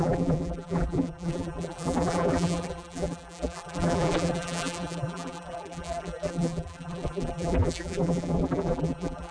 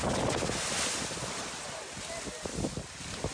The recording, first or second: second